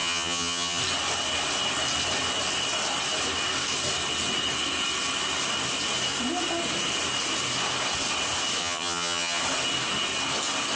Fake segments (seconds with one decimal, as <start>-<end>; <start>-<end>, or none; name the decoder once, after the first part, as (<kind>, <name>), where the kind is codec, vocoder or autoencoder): 0.0-0.8 (vocoder, HiFi-GAN); 8.6-9.4